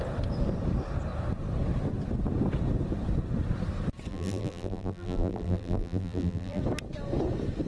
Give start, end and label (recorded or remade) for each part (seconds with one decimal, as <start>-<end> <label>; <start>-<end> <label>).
0.0-4.1 recorded; 4.1-6.6 remade; 6.6-7.7 recorded